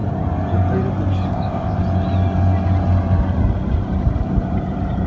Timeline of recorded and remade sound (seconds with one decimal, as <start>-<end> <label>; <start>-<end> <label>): 0.0-1.3 recorded; 1.3-1.8 remade; 1.8-5.1 recorded